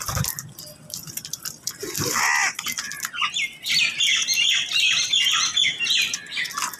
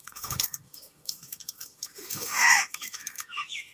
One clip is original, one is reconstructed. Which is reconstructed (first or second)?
second